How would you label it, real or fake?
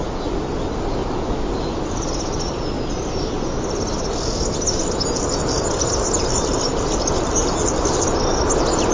real